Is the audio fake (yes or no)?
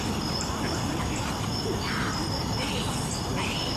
no